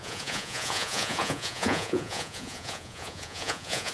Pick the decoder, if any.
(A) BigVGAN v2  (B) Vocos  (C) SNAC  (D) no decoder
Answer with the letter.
B